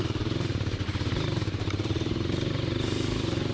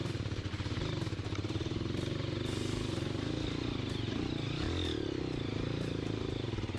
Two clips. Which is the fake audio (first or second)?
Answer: first